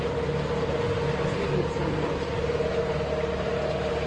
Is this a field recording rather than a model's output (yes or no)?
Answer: yes